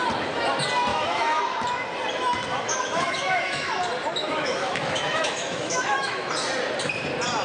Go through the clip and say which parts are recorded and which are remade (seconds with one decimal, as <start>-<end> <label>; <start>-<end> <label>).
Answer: 0.0-0.9 recorded; 0.9-1.4 remade; 1.4-2.5 recorded; 2.5-3.7 remade; 3.7-4.2 recorded; 4.2-6.3 remade; 6.3-7.4 recorded